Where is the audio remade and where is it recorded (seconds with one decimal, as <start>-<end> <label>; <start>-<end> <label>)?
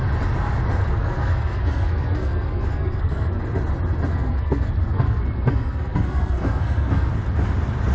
0.0-0.8 recorded; 0.8-3.4 remade; 3.4-4.1 recorded; 4.1-7.1 remade; 7.1-7.9 recorded